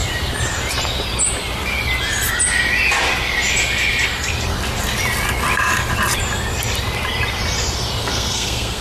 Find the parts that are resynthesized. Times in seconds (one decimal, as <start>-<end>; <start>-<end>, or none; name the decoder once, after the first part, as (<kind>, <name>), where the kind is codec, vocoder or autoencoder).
8.0-8.8 (codec, SNAC)